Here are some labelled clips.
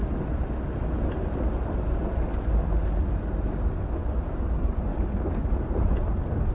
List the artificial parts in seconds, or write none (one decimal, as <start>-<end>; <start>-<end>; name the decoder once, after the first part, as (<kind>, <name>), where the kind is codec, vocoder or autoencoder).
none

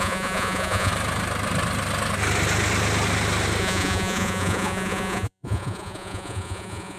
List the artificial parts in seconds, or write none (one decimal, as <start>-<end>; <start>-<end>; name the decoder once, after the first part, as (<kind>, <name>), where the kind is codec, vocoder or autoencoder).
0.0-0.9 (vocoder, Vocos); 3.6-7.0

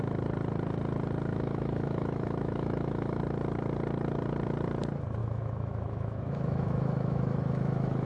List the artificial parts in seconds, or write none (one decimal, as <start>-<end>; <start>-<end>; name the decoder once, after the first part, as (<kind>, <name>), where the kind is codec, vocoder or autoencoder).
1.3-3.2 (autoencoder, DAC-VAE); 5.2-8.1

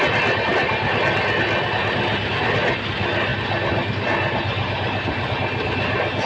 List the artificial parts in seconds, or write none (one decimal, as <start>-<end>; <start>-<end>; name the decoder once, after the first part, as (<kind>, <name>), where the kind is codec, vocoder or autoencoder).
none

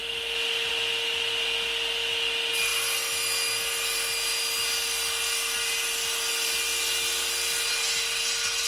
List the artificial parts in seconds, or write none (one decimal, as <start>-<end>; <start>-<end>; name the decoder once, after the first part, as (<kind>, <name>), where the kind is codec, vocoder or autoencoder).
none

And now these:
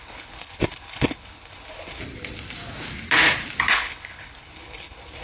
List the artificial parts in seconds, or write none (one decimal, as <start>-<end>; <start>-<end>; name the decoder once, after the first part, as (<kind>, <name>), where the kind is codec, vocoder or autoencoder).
0.0-2.0 (codec, HILCodec); 3.7-5.2